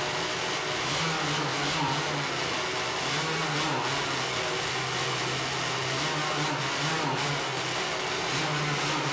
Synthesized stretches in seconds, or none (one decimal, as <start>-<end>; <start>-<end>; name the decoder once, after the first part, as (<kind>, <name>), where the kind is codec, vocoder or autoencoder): none